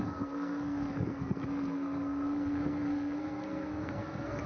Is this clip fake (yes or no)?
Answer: yes